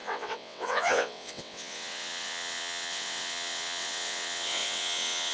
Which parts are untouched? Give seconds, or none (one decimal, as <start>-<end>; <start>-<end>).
none